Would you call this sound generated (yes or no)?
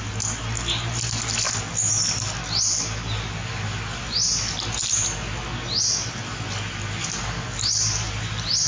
no